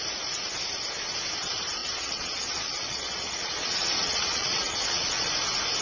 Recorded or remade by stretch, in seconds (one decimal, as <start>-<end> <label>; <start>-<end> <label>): 0.0-1.8 recorded; 1.8-5.3 remade; 5.3-5.8 recorded